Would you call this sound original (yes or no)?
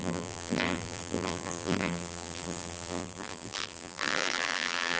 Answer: no